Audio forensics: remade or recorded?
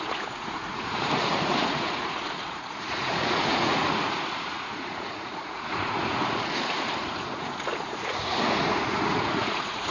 remade